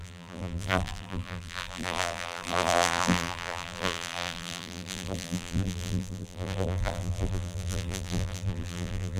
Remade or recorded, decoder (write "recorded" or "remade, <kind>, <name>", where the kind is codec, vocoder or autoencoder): remade, vocoder, BigVGAN v2